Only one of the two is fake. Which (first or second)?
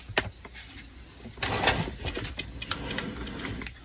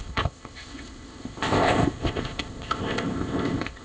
second